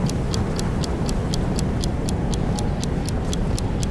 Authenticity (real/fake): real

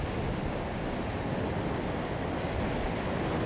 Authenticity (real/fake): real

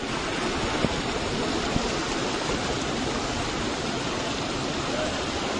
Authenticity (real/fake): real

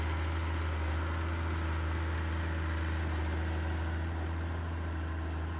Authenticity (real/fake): real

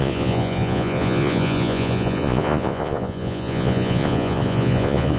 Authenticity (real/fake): fake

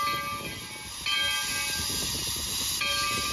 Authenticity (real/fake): real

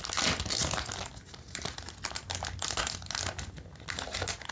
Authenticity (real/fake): real